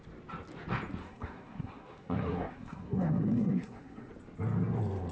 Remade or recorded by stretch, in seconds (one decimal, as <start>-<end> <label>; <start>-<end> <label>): 0.0-1.0 recorded; 1.0-4.1 remade; 4.1-5.1 recorded

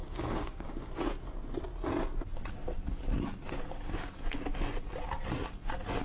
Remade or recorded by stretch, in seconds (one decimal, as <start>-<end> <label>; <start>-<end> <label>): 0.0-0.9 remade; 0.9-6.0 recorded

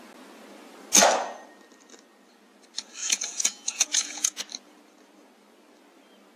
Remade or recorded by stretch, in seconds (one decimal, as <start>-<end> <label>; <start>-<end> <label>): 0.0-3.0 recorded; 3.0-4.4 remade; 4.4-6.4 recorded

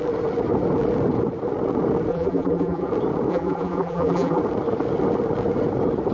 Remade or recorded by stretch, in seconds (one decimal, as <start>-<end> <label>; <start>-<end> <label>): 0.0-2.1 recorded; 2.1-2.9 remade; 2.9-3.3 recorded; 3.3-4.4 remade; 4.4-6.1 recorded